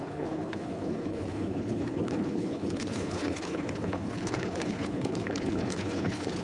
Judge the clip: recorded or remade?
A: remade